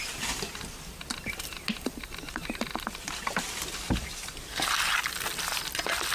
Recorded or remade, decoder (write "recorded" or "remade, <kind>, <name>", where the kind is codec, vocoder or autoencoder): recorded